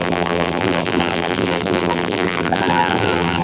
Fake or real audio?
fake